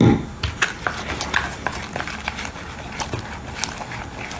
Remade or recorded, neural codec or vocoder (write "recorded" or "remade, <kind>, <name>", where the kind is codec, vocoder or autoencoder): recorded